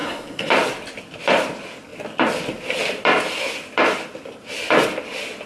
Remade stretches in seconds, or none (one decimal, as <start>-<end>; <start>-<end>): 0.0-0.5